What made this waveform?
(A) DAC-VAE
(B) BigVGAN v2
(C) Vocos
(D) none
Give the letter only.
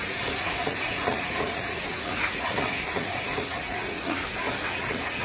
C